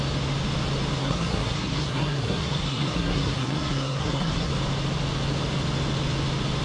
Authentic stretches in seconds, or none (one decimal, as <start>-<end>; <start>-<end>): 0.0-1.0; 4.5-6.6